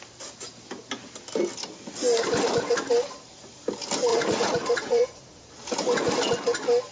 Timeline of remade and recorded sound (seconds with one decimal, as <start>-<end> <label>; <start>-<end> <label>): 0.0-4.1 recorded; 4.1-5.5 remade; 5.5-6.9 recorded